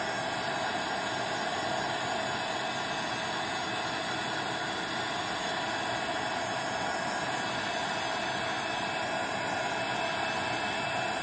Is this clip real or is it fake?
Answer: real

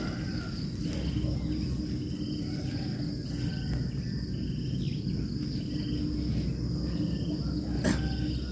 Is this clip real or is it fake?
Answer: real